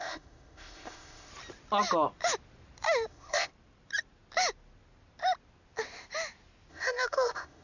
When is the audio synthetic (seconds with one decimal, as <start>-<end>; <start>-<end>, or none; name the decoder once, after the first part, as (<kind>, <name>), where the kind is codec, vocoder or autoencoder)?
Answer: 0.0-1.3 (codec, ZipCodec); 3.1-3.5; 6.7-7.6